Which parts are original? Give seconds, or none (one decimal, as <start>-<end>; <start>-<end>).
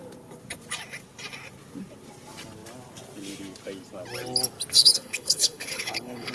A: 0.0-4.8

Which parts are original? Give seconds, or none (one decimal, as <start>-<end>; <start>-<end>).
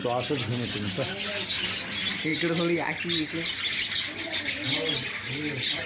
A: 0.0-5.9